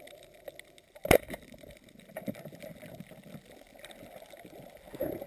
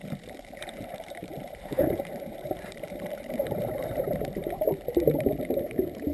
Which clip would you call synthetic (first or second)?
second